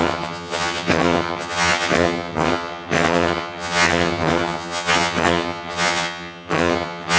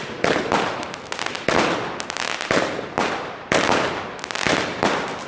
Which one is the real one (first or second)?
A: second